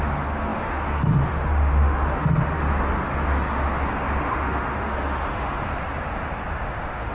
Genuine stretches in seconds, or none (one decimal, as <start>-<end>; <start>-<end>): 2.6-4.2; 5.7-6.6